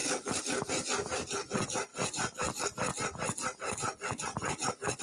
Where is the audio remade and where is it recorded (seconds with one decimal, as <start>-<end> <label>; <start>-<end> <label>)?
0.0-5.0 recorded